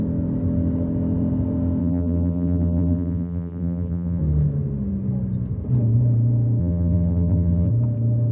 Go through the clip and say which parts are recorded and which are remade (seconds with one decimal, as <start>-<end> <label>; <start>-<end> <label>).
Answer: 0.0-1.8 recorded; 1.8-4.2 remade; 4.2-6.6 recorded; 6.6-7.7 remade; 7.7-8.3 recorded